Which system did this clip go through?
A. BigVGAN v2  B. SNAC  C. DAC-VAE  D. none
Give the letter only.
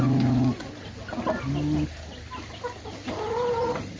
D